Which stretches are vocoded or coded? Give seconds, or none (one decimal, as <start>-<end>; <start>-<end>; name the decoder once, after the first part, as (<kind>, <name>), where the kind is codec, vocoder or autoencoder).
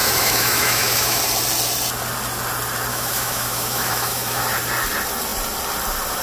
0.0-1.2 (autoencoder, DAC-VAE); 2.9-4.4